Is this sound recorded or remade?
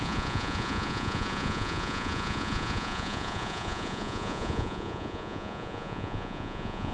remade